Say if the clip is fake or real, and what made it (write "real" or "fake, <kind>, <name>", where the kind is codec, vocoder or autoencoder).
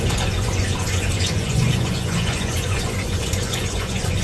fake, vocoder, Vocos